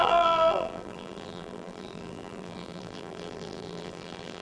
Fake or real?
fake